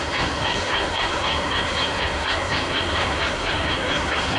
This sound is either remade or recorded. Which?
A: remade